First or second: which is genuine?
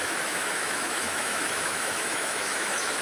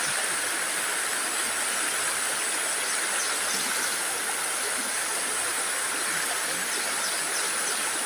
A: second